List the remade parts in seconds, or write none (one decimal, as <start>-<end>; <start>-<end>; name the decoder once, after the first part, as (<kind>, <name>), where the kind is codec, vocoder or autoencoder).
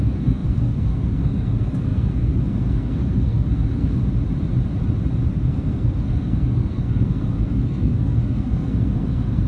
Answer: 0.0-4.0 (codec, SNAC); 5.3-9.5